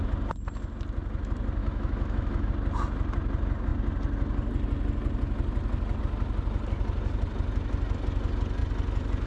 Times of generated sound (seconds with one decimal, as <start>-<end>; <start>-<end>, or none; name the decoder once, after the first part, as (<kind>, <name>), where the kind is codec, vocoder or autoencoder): 1.6-2.5 (autoencoder, DAC-VAE)